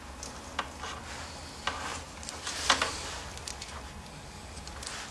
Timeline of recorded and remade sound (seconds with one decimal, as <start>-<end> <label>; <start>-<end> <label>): 0.0-5.1 recorded